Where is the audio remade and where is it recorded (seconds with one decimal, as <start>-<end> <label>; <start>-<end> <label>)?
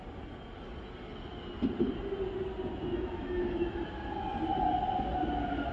0.0-2.9 recorded; 2.9-3.8 remade; 3.8-5.7 recorded